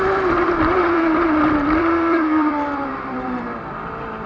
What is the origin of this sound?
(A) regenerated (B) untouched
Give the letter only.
A